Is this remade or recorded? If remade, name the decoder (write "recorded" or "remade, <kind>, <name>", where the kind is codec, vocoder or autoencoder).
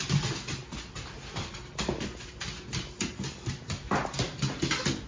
recorded